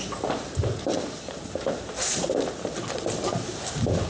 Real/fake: real